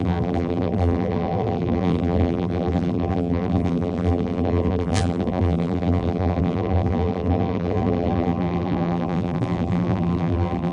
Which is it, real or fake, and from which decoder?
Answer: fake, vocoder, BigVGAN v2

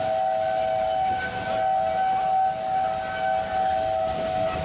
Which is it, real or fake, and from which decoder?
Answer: real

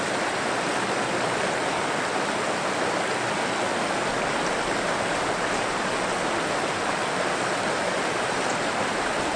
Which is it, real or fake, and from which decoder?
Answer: real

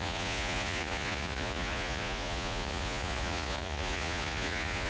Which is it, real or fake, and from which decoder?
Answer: fake, vocoder, Vocos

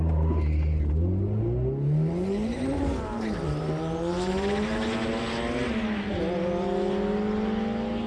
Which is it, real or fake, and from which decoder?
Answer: real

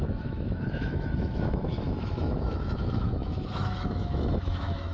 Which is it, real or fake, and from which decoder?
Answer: fake, autoencoder, DAC-VAE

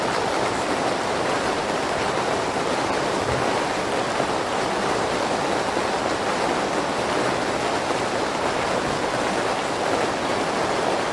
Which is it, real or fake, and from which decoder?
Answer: fake, vocoder, BigVGAN v2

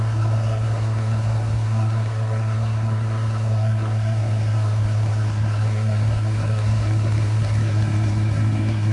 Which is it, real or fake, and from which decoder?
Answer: fake, codec, SNAC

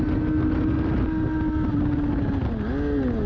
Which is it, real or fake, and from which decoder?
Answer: real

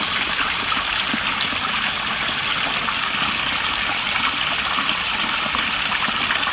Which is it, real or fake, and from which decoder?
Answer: real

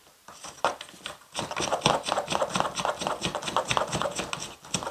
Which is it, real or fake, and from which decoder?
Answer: real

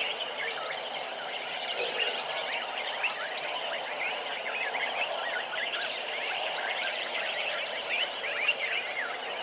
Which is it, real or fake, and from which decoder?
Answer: fake, vocoder, BigVGAN v2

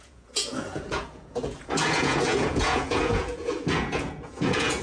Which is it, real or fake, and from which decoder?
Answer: fake, vocoder, Vocos